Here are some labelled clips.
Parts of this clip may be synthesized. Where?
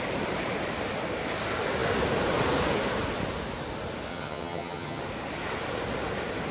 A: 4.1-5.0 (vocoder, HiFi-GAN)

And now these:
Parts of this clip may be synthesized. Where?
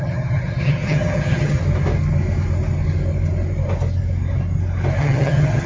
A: 0.0-1.6 (vocoder, HiFi-GAN); 5.0-5.7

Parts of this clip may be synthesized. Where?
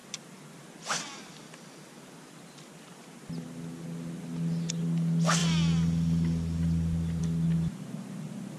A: none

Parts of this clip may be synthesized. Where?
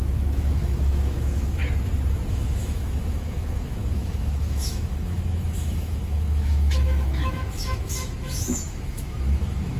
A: 0.0-1.6 (autoencoder, DAC-VAE); 2.3-9.8